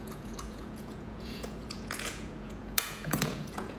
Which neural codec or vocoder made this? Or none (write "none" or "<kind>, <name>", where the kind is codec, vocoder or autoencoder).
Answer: vocoder, Vocos